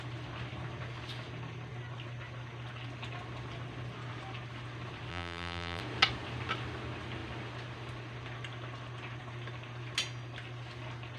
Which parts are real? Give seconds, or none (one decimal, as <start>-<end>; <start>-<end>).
0.0-5.1; 5.8-11.2